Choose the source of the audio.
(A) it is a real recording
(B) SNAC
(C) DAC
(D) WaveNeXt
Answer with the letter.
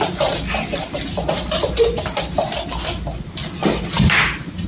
A